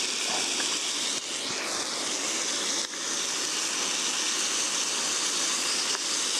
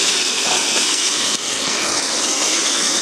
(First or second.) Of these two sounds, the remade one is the second